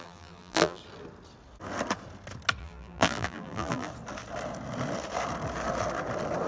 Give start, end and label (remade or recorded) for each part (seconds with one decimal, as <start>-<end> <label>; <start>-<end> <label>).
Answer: 0.0-0.8 remade; 0.8-2.6 recorded; 2.6-3.9 remade; 3.9-6.5 recorded